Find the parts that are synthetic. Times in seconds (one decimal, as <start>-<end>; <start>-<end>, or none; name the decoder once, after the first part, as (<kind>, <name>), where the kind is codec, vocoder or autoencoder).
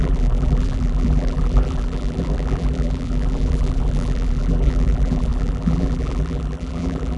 0.0-7.2 (vocoder, BigVGAN v2)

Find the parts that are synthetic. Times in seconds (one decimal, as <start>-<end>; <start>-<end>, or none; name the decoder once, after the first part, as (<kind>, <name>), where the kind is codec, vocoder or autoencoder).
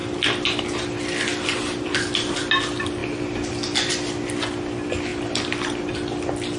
0.0-2.4 (vocoder, BigVGAN v2); 5.1-5.9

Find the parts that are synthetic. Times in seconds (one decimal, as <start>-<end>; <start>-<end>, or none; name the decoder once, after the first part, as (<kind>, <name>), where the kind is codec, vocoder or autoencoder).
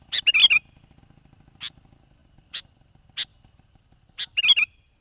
2.2-2.7 (vocoder, BigVGAN v2); 3.3-4.4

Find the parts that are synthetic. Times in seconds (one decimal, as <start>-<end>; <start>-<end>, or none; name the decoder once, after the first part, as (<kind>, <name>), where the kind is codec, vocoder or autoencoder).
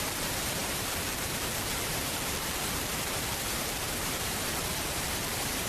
0.0-5.7 (vocoder, BigVGAN v2)